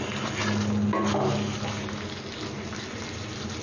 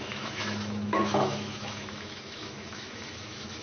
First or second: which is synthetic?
second